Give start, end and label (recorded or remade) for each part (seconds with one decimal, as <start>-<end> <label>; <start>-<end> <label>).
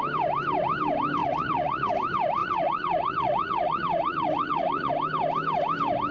0.0-1.2 recorded; 1.2-1.9 remade; 1.9-2.4 recorded; 2.4-4.9 remade; 4.9-6.1 recorded